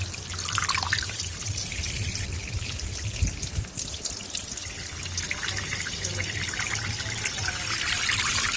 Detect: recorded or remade recorded